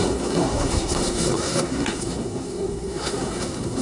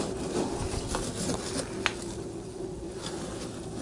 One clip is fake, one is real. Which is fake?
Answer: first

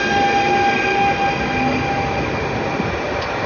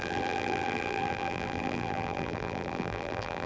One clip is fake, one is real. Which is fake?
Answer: second